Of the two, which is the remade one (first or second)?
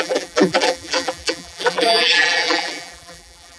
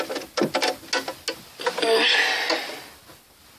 first